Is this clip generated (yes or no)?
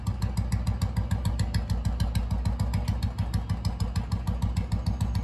no